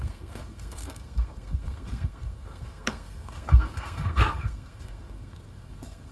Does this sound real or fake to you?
fake